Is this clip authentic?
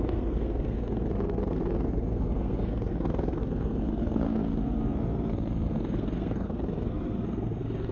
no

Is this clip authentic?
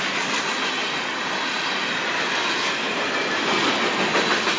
yes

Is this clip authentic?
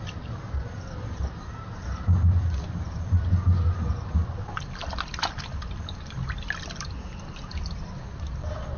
yes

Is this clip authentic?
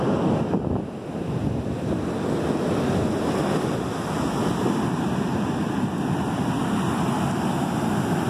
yes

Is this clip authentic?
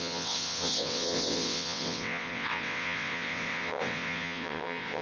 no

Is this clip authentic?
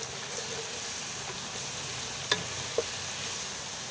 yes